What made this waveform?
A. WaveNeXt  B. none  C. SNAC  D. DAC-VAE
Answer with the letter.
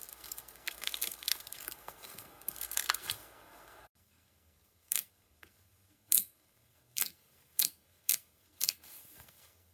C